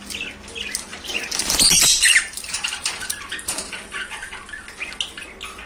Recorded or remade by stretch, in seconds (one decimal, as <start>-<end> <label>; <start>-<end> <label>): 0.0-0.9 recorded; 0.9-4.3 remade; 4.3-5.7 recorded